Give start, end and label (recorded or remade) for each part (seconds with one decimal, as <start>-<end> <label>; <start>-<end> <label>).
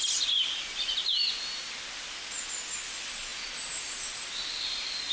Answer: 0.0-5.1 recorded